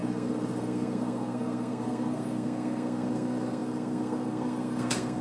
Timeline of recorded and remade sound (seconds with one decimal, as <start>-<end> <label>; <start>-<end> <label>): 0.0-5.2 remade